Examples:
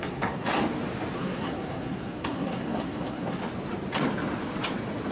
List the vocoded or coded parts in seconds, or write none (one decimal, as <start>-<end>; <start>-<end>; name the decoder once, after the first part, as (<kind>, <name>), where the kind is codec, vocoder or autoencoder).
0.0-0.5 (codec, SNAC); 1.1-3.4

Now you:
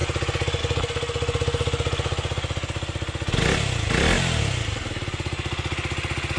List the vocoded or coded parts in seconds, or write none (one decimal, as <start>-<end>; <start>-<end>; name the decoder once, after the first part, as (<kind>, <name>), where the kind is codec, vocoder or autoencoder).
none

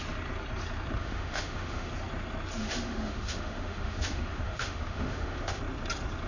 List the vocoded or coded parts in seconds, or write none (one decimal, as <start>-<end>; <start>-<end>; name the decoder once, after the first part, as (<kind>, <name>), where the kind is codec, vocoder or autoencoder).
1.0-1.9 (autoencoder, DAC-VAE); 2.6-5.6